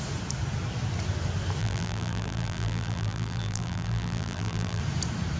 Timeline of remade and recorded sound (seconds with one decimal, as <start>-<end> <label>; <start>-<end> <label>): 0.0-1.6 recorded; 1.6-4.8 remade; 4.8-5.4 recorded